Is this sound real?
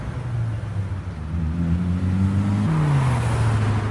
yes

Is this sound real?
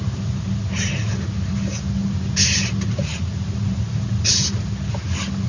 yes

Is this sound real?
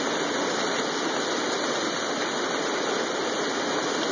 yes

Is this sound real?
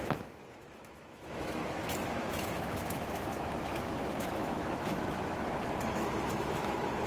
no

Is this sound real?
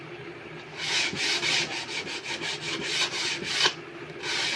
yes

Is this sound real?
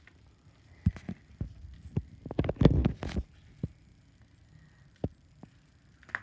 yes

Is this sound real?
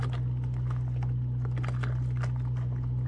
yes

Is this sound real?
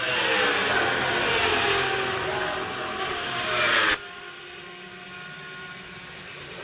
yes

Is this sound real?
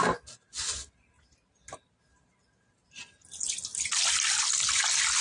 yes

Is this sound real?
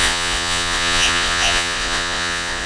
no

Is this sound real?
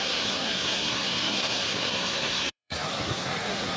no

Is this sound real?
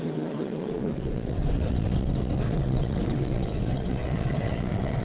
no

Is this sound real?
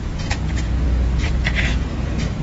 no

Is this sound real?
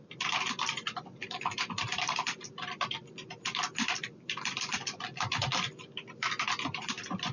no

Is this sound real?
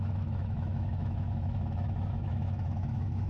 no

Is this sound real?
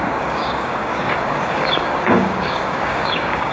no